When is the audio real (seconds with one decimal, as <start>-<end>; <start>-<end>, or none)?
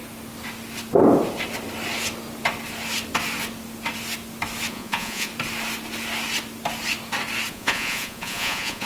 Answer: 0.0-4.7; 5.3-7.5